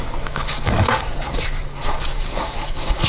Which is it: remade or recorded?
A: remade